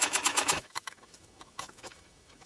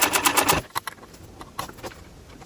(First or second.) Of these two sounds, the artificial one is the first